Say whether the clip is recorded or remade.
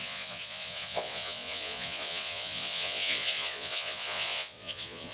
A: remade